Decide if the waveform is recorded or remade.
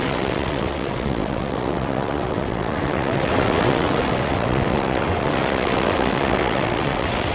remade